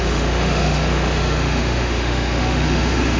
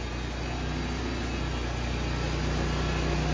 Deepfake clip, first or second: first